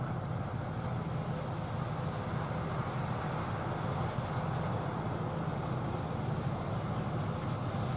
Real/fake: real